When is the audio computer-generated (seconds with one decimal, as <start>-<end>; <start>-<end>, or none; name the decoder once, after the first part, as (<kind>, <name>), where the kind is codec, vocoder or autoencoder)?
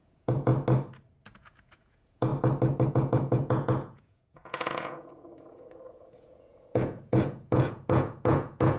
0.0-0.5 (vocoder, Vocos); 1.2-2.3; 2.9-8.8